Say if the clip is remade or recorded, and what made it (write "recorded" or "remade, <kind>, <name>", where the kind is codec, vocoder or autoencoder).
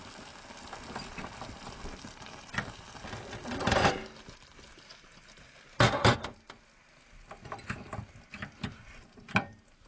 recorded